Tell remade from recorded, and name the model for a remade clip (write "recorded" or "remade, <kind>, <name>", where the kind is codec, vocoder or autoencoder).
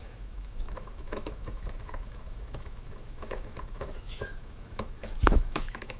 remade, autoencoder, DAC-VAE